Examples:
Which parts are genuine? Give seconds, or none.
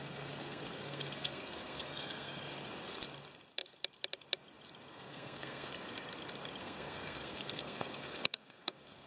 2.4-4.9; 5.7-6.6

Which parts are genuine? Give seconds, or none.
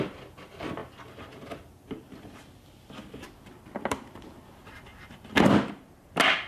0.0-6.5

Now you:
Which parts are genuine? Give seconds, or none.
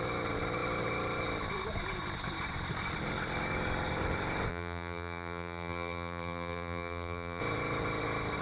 0.0-4.5; 7.4-8.4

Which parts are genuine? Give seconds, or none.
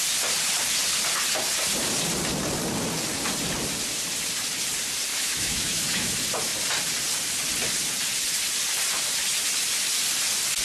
0.0-5.1; 6.1-10.6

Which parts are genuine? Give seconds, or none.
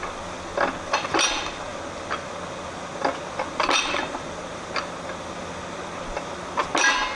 0.0-7.2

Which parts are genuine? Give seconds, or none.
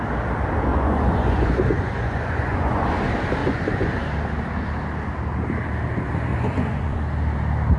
0.0-0.7; 3.0-3.4; 3.9-6.3; 7.0-7.8